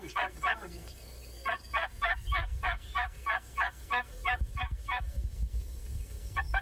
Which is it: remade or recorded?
remade